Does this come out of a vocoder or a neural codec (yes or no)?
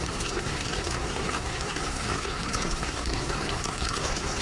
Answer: yes